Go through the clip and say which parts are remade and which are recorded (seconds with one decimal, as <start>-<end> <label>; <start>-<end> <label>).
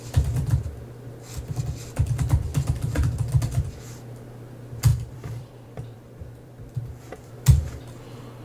0.0-4.9 recorded; 4.9-7.3 remade; 7.3-8.4 recorded